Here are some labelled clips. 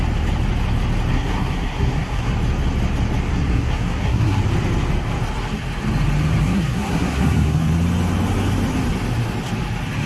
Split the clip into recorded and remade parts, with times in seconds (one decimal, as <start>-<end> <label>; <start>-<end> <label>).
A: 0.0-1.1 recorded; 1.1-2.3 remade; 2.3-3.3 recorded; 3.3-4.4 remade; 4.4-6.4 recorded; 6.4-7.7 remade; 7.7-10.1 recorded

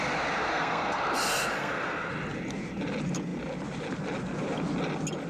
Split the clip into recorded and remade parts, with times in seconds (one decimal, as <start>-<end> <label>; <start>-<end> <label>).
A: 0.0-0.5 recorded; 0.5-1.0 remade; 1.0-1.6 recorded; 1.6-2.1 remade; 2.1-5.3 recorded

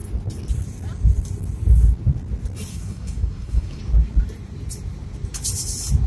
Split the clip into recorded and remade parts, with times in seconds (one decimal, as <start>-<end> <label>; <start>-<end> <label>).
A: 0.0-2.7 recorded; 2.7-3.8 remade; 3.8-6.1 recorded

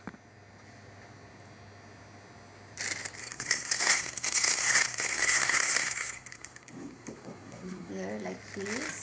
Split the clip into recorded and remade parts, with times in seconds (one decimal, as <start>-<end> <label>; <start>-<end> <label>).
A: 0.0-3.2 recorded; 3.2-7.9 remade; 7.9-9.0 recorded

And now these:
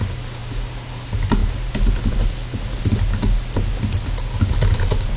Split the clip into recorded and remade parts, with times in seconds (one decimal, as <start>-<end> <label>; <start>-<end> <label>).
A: 0.0-5.2 recorded